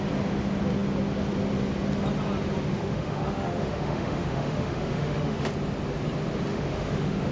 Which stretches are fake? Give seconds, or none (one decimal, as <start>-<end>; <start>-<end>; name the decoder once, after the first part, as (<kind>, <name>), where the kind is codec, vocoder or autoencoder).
2.7-5.5 (autoencoder, DAC-VAE); 6.5-7.3